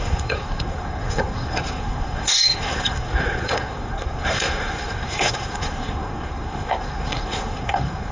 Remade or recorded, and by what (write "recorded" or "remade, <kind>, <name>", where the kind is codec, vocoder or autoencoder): remade, codec, SNAC